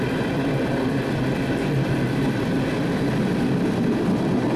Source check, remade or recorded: remade